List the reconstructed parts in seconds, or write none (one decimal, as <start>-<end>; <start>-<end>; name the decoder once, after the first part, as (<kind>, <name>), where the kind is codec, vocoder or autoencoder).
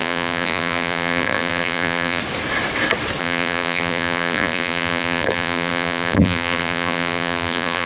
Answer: 0.0-2.2 (vocoder, BigVGAN v2); 3.2-7.9